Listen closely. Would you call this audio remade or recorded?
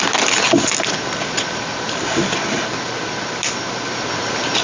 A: recorded